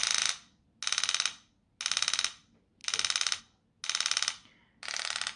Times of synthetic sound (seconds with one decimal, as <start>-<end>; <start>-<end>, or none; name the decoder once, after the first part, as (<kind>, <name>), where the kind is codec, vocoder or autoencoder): none